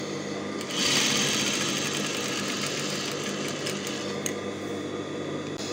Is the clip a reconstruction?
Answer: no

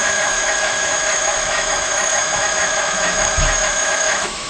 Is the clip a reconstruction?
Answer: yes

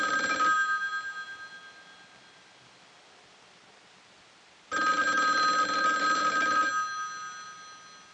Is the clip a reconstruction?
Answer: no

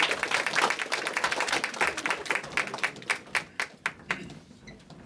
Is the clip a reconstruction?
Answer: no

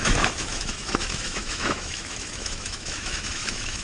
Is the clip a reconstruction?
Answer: yes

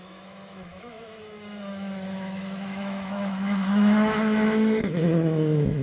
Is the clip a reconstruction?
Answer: yes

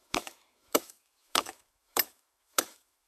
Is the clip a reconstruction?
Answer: yes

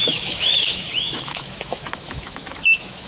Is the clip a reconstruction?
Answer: yes